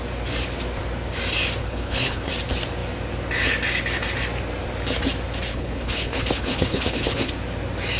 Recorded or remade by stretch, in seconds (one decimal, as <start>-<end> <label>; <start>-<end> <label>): 0.0-1.6 recorded; 1.6-2.3 remade; 2.3-5.5 recorded; 5.5-7.3 remade; 7.3-8.0 recorded